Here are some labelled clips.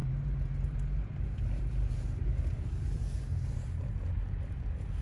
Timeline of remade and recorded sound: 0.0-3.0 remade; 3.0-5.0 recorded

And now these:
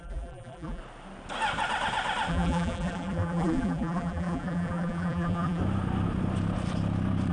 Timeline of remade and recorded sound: 0.0-0.8 remade; 0.8-2.3 recorded; 2.3-5.6 remade; 5.6-7.3 recorded

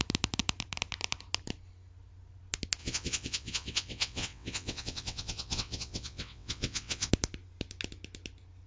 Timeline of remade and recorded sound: 0.0-2.8 recorded; 2.8-7.1 remade; 7.1-8.7 recorded

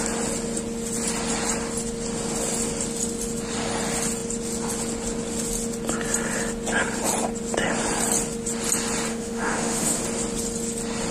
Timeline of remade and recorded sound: 0.0-9.1 recorded; 9.1-10.0 remade; 10.0-11.1 recorded

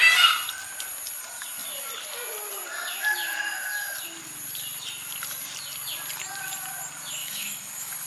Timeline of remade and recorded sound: 0.0-7.2 recorded; 7.2-8.1 remade

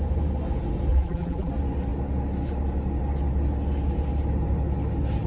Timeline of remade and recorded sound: 0.0-0.9 recorded; 0.9-1.5 remade; 1.5-5.3 recorded

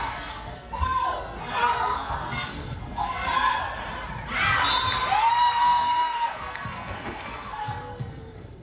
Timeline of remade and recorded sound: 0.0-3.6 remade; 3.6-5.2 recorded; 5.2-8.6 remade